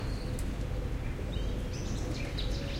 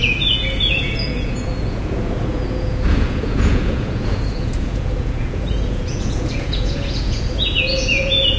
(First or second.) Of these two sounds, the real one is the first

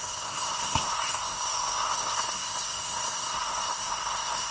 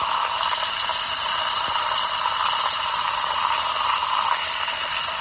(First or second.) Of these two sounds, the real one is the second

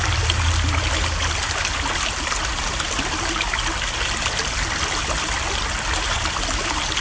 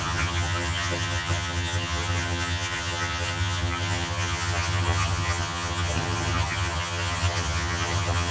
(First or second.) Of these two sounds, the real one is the first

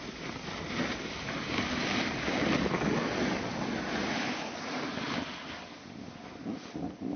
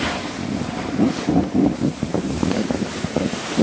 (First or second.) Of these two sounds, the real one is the first